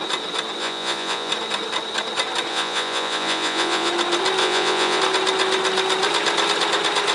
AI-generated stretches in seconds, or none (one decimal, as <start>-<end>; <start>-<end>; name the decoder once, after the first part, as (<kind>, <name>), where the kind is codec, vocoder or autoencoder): 0.6-1.3 (vocoder, Vocos); 2.5-3.9; 4.4-5.0